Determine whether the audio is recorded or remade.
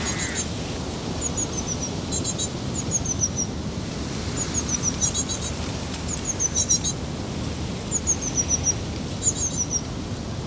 recorded